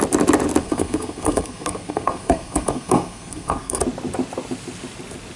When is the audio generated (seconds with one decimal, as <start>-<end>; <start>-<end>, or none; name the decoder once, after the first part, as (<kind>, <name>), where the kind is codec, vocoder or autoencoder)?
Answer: 0.6-3.8 (codec, SNAC)